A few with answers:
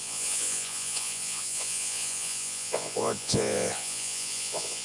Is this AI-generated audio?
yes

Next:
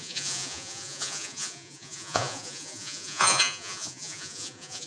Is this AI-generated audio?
yes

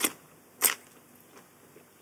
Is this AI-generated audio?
no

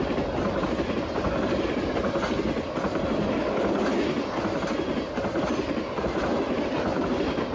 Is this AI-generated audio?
no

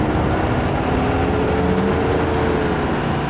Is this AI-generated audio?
no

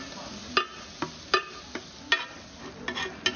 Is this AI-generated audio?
no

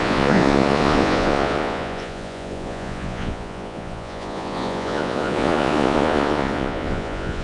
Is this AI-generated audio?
yes